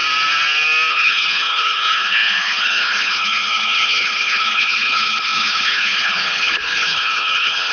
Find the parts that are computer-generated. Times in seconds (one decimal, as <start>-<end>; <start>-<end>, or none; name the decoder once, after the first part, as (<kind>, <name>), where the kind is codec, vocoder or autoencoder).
0.9-7.7 (codec, HILCodec)